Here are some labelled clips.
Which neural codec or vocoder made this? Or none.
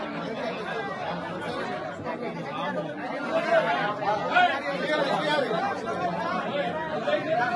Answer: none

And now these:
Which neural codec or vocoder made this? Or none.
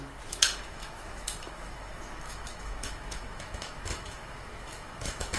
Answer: autoencoder, DAC-VAE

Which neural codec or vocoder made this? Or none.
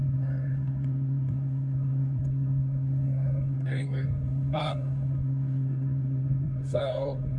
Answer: codec, SNAC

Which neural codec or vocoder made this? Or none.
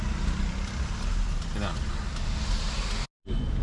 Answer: none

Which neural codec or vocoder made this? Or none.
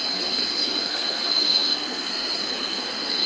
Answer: codec, SNAC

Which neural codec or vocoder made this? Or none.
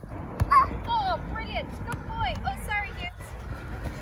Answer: none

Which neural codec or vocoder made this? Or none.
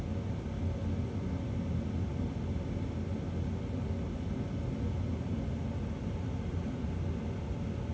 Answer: none